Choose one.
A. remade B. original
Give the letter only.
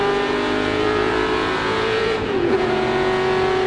A